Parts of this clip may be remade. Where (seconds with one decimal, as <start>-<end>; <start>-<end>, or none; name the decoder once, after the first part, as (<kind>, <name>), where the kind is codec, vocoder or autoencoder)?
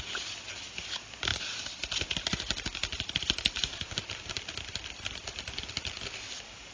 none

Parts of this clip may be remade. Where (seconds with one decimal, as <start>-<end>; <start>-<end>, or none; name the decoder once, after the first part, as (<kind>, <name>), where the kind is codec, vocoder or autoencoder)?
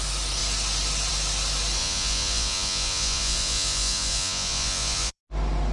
1.8-5.2 (vocoder, Vocos)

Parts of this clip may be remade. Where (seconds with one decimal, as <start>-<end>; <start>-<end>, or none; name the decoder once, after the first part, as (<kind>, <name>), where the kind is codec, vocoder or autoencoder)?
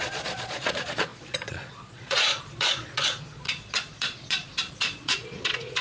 0.0-5.8 (vocoder, Vocos)